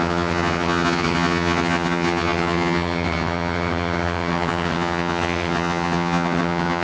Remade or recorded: remade